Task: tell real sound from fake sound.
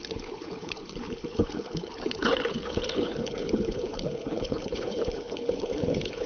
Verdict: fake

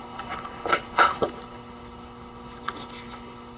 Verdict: fake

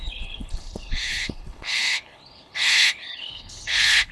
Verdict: fake